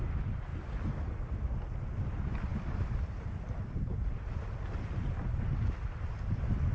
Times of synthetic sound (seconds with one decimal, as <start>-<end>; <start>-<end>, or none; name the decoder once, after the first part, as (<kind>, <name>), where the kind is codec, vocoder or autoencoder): none